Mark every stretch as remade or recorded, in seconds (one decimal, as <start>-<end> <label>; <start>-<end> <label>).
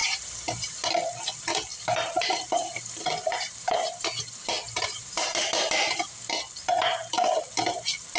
0.0-0.9 remade; 0.9-1.7 recorded; 1.7-6.2 remade; 6.2-8.2 recorded